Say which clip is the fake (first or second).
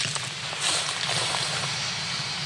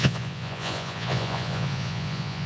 second